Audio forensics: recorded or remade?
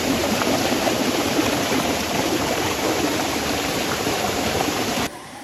remade